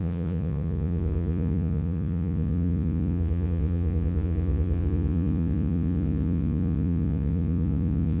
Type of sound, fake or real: fake